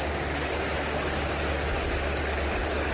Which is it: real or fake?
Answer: real